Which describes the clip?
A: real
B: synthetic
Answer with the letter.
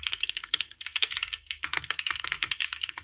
B